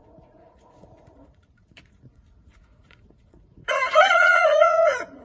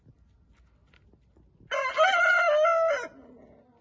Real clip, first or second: second